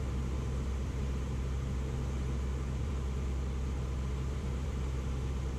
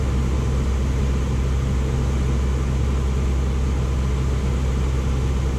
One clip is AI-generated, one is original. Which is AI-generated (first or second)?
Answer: first